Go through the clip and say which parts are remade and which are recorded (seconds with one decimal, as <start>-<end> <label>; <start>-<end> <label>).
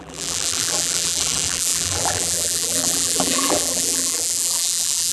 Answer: 0.0-5.1 remade